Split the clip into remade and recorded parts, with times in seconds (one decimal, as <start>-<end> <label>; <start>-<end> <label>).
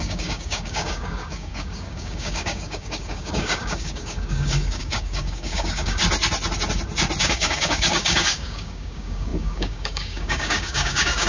0.0-6.0 remade; 6.0-7.2 recorded; 7.2-11.3 remade